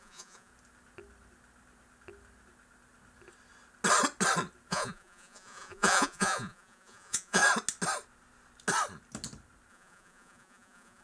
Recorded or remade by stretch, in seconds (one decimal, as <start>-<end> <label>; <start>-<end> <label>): 0.0-0.5 remade; 0.5-4.7 recorded; 4.7-7.4 remade; 7.4-9.7 recorded; 9.7-11.0 remade